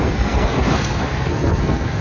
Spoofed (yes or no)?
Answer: yes